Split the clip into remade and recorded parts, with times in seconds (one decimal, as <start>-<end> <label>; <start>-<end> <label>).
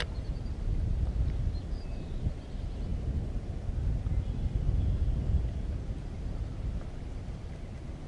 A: 0.0-0.9 recorded; 0.9-1.6 remade; 1.6-8.1 recorded